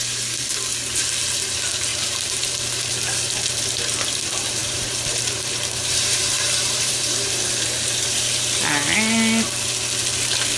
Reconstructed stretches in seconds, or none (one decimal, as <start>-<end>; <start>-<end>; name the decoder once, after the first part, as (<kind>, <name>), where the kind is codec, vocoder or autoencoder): 1.9-2.5 (vocoder, BigVGAN v2); 4.6-7.0

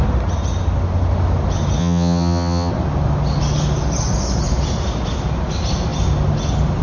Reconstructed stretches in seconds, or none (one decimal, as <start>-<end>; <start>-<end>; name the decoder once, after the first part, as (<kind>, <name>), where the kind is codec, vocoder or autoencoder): 1.8-2.7 (vocoder, HiFi-GAN)

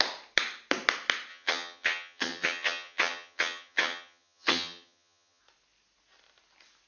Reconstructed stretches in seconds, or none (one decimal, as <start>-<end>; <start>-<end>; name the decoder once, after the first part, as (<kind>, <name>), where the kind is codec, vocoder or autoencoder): 1.3-5.4 (vocoder, HiFi-GAN)

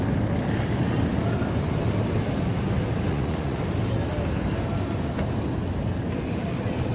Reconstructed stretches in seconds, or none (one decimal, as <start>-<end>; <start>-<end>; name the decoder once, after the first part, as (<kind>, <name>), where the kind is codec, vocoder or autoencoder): 3.1-3.6 (vocoder, Vocos)

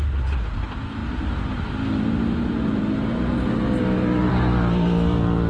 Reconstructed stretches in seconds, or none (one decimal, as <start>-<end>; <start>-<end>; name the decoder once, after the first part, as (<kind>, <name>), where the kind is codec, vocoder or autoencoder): none

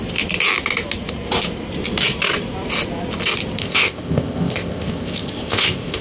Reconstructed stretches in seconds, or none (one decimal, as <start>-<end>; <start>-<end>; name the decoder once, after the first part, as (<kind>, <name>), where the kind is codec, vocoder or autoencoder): 3.6-6.0 (codec, ZipCodec)

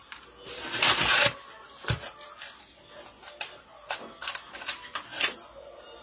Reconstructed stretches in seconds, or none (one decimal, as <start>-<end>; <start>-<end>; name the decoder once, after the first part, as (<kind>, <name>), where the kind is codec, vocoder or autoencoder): 0.0-1.2 (vocoder, BigVGAN v2); 2.6-6.0